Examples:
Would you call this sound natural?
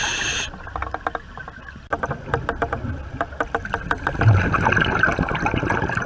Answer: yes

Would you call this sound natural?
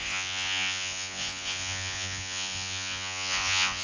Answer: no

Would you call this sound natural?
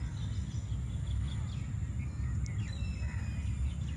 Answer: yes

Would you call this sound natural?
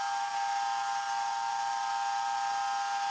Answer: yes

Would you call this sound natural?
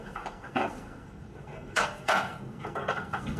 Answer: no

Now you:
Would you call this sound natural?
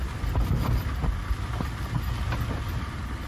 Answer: yes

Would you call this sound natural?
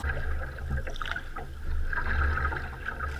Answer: yes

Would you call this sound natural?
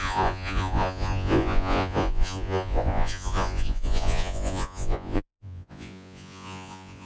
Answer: no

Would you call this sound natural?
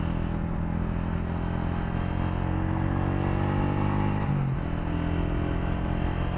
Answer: yes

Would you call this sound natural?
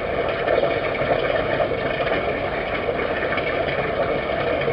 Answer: yes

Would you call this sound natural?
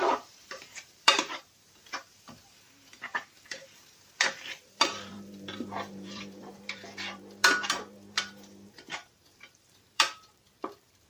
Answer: no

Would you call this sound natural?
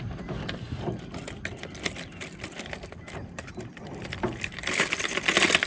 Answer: yes